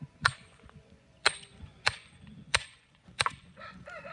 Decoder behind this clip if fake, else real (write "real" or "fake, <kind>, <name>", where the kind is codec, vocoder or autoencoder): fake, vocoder, Vocos